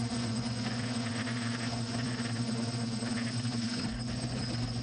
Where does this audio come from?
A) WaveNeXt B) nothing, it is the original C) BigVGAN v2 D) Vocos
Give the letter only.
D